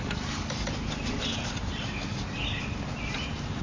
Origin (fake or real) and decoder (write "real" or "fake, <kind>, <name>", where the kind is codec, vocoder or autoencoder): real